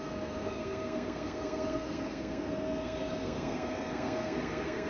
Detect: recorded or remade remade